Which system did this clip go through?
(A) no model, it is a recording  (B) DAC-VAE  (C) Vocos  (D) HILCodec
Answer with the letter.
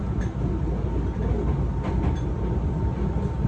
A